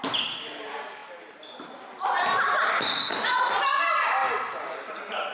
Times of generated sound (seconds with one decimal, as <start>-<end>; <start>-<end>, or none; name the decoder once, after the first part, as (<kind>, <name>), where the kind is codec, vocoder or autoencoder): none